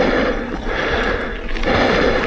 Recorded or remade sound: recorded